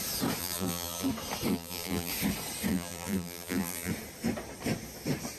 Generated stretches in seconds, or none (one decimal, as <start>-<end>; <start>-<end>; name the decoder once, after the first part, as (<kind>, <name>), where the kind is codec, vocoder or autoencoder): 0.4-1.1 (vocoder, BigVGAN v2); 1.5-2.1; 2.7-3.9